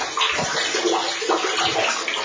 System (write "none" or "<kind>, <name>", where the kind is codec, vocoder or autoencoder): none